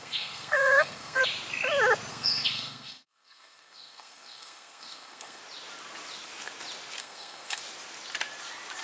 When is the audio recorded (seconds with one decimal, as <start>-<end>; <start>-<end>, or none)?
1.2-2.1; 5.4-7.0; 7.6-8.8